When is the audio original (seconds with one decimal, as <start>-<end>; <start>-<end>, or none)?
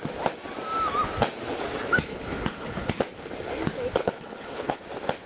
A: 0.0-2.1; 3.0-4.0; 4.8-5.3